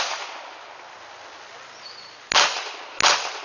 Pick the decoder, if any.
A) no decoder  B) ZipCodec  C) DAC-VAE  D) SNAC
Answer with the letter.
A